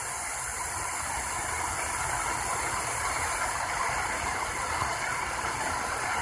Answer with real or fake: real